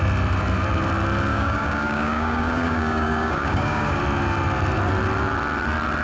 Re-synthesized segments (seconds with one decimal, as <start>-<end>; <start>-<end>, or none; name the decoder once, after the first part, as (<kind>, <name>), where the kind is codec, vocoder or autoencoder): 1.3-4.0 (codec, DAC)